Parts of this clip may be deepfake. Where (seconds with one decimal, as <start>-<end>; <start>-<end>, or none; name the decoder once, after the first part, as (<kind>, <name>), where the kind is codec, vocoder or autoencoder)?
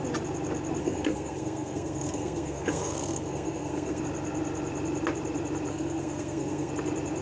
0.8-4.0 (codec, SNAC); 5.7-6.7